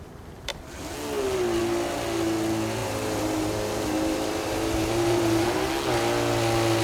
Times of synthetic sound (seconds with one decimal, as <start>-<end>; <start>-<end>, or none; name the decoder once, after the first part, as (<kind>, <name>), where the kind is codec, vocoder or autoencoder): 2.8-5.7 (vocoder, BigVGAN v2)